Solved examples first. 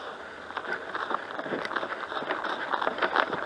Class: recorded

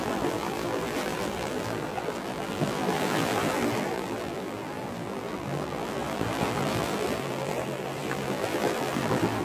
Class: remade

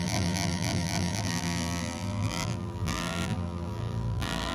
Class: remade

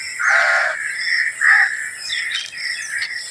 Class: recorded